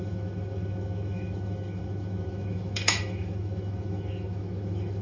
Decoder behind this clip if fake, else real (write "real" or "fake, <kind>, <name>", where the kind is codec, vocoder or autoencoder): fake, autoencoder, DAC-VAE